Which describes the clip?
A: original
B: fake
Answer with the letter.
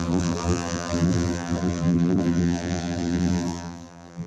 B